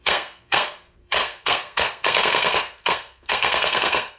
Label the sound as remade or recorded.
remade